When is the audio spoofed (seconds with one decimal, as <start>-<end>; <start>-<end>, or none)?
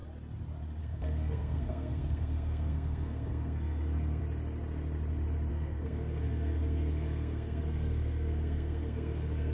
0.8-4.2; 5.5-9.5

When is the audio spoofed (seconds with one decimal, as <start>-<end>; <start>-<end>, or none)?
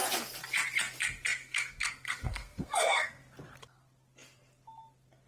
1.4-3.2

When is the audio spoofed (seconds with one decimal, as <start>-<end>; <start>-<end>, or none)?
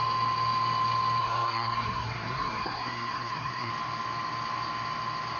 1.2-3.7